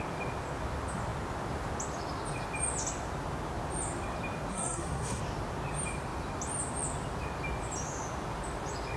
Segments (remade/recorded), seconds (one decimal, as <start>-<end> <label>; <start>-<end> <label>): 0.0-4.5 recorded; 4.5-5.2 remade; 5.2-9.0 recorded